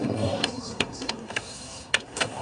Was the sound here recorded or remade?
remade